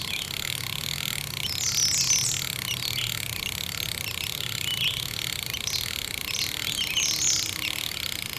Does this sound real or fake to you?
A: real